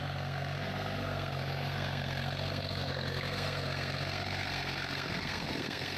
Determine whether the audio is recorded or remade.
remade